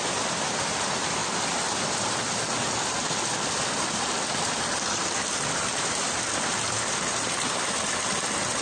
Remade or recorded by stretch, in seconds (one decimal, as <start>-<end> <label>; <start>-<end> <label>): 0.0-8.6 recorded